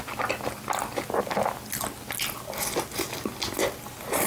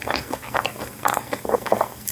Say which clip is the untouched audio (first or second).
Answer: first